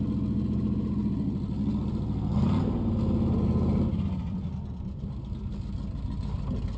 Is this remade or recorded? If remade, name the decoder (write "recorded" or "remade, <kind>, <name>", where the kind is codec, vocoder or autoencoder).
recorded